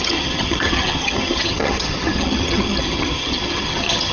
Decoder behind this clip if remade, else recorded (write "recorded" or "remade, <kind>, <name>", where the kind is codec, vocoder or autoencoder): remade, vocoder, HiFi-GAN